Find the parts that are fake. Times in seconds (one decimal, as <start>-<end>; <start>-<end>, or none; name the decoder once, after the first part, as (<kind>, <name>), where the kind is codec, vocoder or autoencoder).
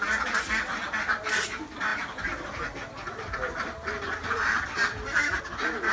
1.9-5.4 (vocoder, BigVGAN v2)